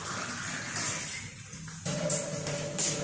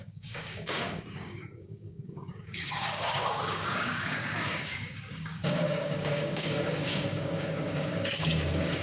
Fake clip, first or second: second